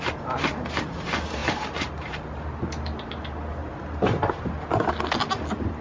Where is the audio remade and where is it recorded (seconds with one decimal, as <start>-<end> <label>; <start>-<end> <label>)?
0.0-1.4 recorded; 1.4-2.1 remade; 2.1-3.6 recorded; 3.6-4.4 remade; 4.4-5.8 recorded